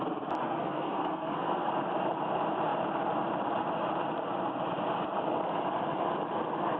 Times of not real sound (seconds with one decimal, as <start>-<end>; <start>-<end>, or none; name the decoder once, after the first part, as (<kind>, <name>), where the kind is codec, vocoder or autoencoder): 0.4-1.7 (codec, SNAC)